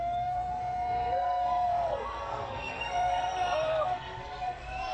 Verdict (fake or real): fake